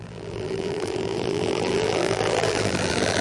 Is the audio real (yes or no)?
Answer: no